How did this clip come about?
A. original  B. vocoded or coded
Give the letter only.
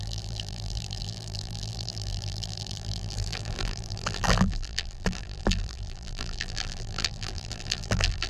B